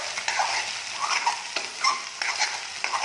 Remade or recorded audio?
recorded